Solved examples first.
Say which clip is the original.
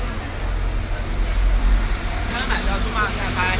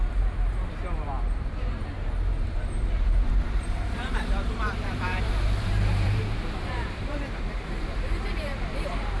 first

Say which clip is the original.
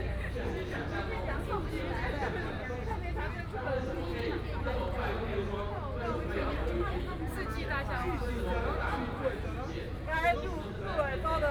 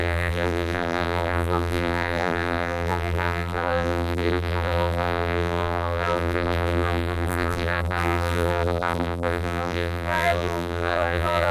first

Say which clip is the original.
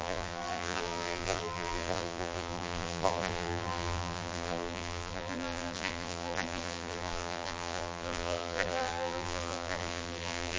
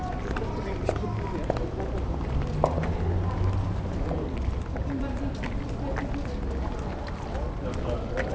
second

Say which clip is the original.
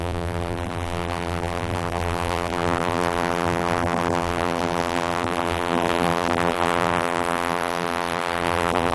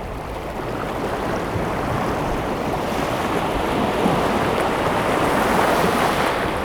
second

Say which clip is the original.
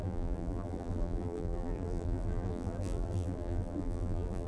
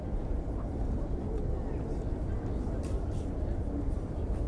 second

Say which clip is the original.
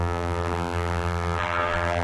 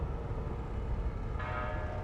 second